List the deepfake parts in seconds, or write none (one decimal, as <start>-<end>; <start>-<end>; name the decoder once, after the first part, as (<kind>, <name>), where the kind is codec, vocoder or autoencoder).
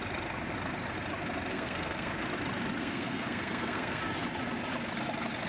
1.5-2.2 (codec, SNAC); 2.8-4.0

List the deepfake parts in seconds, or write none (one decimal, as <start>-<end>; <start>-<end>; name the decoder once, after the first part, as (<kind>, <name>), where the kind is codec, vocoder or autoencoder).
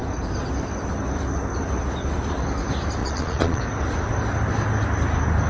3.0-3.6 (vocoder, Vocos)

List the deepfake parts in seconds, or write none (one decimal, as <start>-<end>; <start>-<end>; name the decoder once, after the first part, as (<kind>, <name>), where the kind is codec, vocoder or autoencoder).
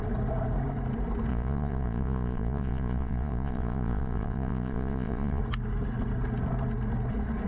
1.3-5.4 (vocoder, Vocos)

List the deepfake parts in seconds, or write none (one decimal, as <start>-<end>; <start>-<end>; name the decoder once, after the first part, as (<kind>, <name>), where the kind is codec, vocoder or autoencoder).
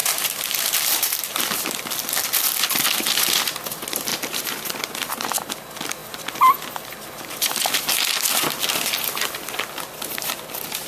0.0-1.8 (vocoder, BigVGAN v2); 4.1-5.5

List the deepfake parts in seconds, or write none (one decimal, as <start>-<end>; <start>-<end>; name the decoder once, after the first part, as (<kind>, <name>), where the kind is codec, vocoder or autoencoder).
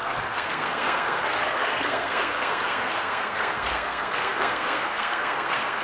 0.0-5.8 (codec, SNAC)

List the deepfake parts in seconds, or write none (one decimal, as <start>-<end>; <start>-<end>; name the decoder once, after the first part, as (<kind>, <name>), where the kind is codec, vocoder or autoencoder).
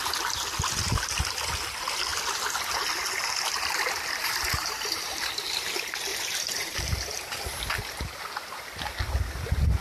4.2-5.3 (vocoder, BigVGAN v2); 6.1-7.7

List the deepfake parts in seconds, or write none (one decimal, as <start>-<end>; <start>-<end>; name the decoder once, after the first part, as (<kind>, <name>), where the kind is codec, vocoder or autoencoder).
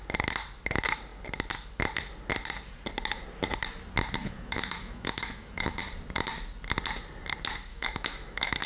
4.2-5.8 (autoencoder, DAC-VAE); 7.7-8.7